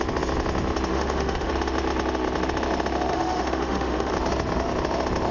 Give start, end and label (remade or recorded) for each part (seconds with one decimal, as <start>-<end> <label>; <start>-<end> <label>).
0.0-0.9 recorded; 0.9-1.5 remade; 1.5-3.1 recorded; 3.1-4.1 remade; 4.1-5.3 recorded